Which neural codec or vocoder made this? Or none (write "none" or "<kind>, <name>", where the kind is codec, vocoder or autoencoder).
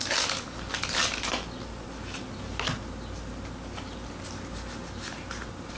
none